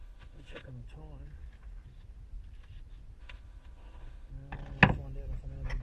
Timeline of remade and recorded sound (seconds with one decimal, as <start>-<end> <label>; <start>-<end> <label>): 0.0-0.7 remade; 0.7-3.2 recorded; 3.2-4.3 remade; 4.3-5.8 recorded